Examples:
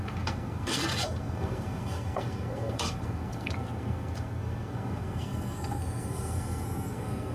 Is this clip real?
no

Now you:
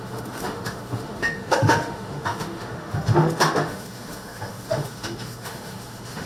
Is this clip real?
no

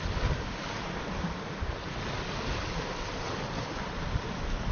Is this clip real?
yes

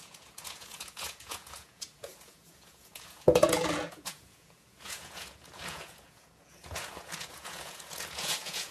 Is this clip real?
no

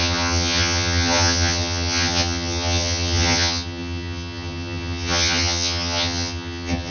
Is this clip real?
no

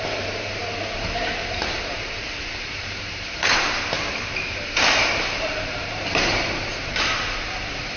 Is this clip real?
no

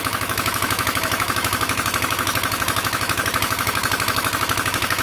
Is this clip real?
no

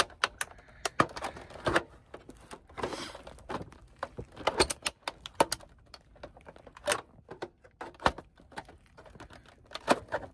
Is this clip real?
yes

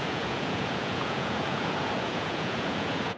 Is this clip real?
no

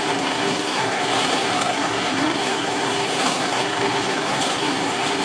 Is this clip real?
no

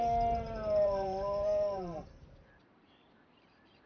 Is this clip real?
no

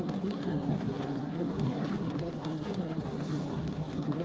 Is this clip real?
no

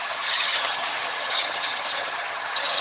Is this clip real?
no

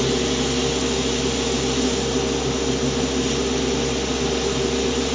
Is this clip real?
yes